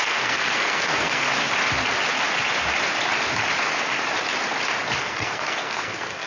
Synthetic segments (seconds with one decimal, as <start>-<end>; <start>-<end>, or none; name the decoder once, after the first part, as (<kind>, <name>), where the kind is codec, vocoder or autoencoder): 0.0-1.2 (codec, SNAC); 5.0-6.3